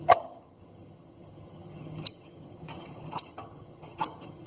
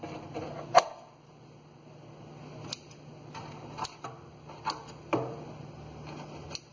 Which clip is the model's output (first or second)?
first